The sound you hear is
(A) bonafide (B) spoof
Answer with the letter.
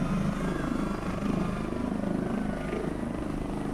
A